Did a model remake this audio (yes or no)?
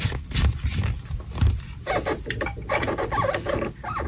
no